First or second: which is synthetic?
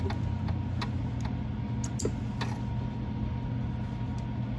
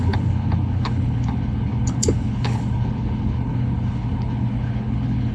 second